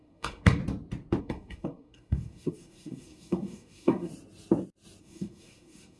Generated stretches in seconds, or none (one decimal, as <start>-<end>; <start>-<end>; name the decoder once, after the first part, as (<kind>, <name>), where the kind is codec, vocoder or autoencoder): 0.0-0.6 (codec, SNAC); 1.2-4.1; 5.0-6.0